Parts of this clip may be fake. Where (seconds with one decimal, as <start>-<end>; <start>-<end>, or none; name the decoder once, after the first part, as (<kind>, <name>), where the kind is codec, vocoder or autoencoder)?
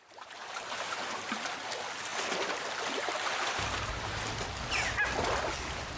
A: 0.4-1.4 (vocoder, BigVGAN v2)